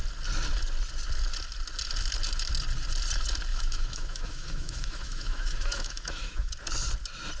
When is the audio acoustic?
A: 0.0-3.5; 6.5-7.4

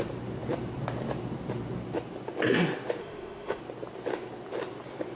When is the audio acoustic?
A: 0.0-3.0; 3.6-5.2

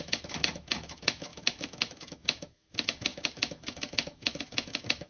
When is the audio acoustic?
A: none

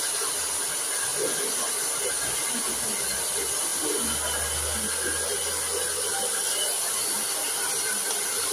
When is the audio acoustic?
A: 0.0-8.5

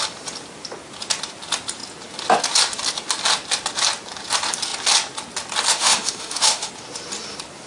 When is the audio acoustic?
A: 0.0-5.7; 6.7-7.7

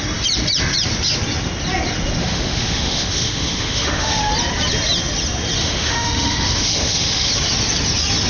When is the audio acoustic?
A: 0.0-2.2; 4.3-5.6; 7.3-8.3